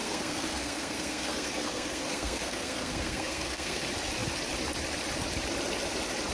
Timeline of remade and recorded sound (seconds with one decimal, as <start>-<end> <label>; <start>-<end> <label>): 0.0-3.8 remade; 3.8-6.3 recorded